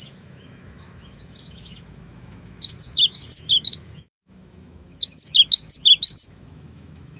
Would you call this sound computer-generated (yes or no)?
yes